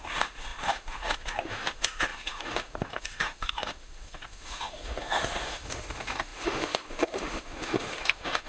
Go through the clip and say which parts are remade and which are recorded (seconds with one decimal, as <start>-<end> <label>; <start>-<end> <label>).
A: 0.0-8.5 remade